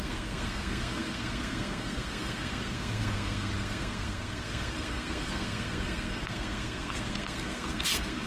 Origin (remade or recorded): remade